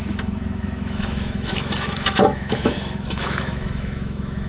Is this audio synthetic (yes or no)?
yes